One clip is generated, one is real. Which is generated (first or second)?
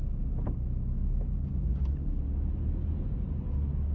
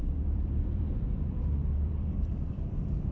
second